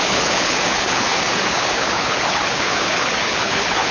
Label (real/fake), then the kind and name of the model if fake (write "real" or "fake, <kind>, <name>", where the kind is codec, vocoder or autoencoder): fake, codec, HILCodec